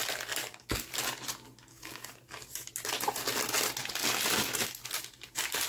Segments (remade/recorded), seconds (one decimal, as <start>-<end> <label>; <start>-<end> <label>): 0.0-0.4 recorded; 0.4-0.9 remade; 0.9-1.7 recorded; 1.7-2.7 remade; 2.7-5.7 recorded